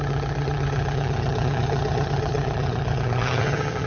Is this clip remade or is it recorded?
remade